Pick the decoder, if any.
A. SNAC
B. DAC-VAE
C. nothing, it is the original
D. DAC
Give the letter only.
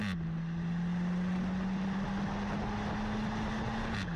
C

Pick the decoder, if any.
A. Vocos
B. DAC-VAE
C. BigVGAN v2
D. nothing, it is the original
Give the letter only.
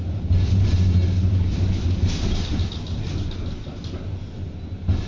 D